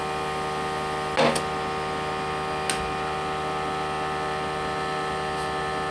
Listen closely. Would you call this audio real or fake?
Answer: real